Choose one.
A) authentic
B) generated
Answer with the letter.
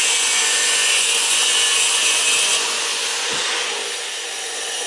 B